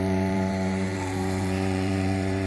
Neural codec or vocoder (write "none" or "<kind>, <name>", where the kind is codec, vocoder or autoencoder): vocoder, BigVGAN v2